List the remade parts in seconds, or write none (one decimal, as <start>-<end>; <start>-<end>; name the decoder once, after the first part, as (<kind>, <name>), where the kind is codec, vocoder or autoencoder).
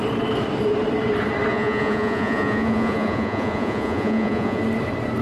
1.5-4.6 (vocoder, Vocos)